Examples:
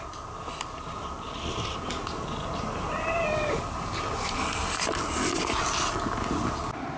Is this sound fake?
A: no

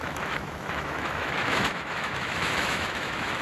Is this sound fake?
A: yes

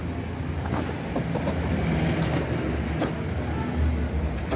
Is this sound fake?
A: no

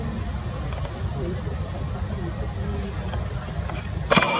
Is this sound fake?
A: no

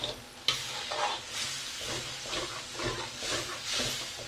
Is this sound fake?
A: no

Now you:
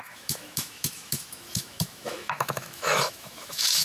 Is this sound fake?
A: yes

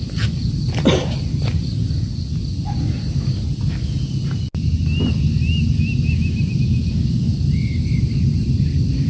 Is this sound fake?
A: no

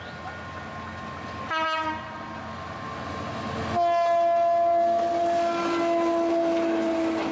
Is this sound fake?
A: no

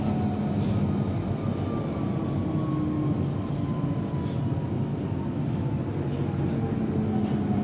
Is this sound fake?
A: no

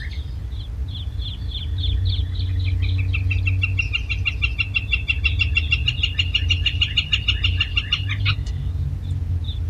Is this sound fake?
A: no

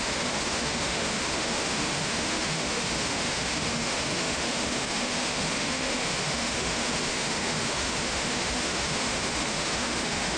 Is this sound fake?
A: yes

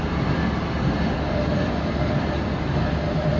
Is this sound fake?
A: no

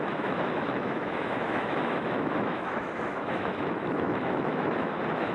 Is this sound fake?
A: yes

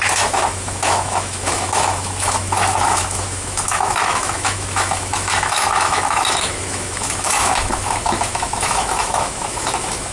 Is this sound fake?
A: yes